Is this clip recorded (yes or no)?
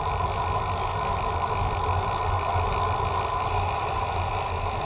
yes